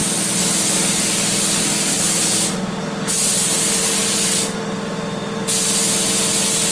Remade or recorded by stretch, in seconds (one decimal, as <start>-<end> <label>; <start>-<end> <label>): 0.0-6.7 recorded

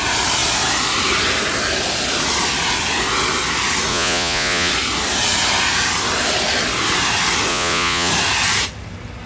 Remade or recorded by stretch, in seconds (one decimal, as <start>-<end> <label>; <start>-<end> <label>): 0.0-3.9 recorded; 3.9-4.7 remade; 4.7-7.5 recorded; 7.5-8.1 remade; 8.1-9.3 recorded

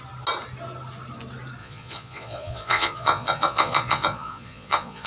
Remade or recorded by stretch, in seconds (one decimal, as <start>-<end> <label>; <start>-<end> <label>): 0.0-1.6 recorded; 1.6-5.1 remade

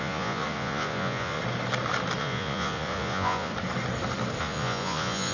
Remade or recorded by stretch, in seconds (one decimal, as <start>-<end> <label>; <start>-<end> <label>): 0.0-1.4 remade; 1.4-2.2 recorded; 2.2-3.5 remade; 3.5-4.4 recorded; 4.4-5.3 remade

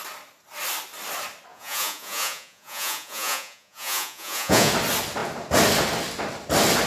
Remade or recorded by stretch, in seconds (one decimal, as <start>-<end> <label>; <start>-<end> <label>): 0.0-1.5 recorded; 1.5-4.7 remade; 4.7-6.9 recorded